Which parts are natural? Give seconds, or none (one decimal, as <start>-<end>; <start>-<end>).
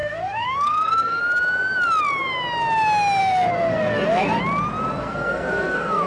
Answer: 1.2-3.2; 4.4-5.0